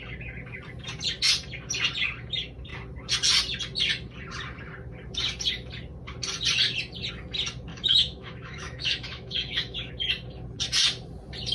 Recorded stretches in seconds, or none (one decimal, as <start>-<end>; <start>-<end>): 0.0-7.7; 9.9-11.5